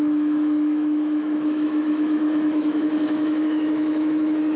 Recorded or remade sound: remade